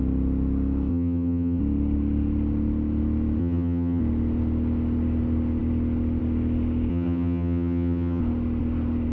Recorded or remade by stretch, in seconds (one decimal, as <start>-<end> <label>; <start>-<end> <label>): 0.0-0.9 recorded; 0.9-1.6 remade; 1.6-3.4 recorded; 3.4-4.0 remade; 4.0-6.9 recorded; 6.9-8.2 remade; 8.2-9.1 recorded